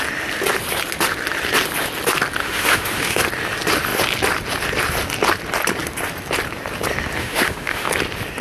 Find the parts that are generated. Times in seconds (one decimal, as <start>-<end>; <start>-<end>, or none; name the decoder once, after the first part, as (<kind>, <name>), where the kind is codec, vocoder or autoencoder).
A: 2.4-3.2 (autoencoder, DAC-VAE); 7.2-7.9